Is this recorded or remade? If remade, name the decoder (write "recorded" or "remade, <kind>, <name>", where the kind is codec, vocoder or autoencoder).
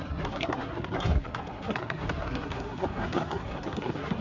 remade, codec, SNAC